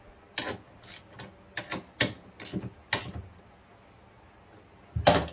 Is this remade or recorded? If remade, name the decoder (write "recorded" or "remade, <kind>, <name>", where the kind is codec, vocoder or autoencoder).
recorded